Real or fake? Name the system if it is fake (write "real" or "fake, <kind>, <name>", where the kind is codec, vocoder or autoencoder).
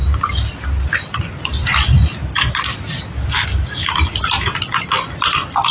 real